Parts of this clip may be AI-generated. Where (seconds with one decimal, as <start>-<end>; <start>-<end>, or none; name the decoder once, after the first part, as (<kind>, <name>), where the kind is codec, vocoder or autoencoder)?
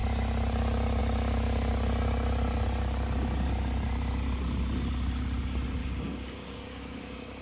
5.8-7.4 (codec, DAC)